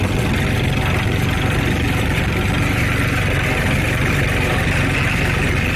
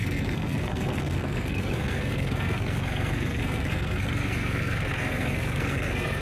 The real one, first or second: first